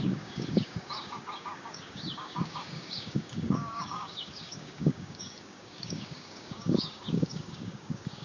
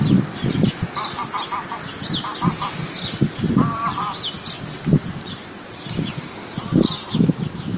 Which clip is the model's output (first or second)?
first